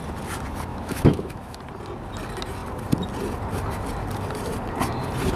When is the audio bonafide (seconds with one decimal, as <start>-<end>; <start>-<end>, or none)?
0.0-0.7; 1.6-5.4